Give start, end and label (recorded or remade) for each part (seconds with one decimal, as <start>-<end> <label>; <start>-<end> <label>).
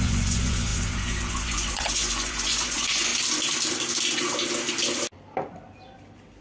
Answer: 0.0-3.1 remade; 3.1-6.4 recorded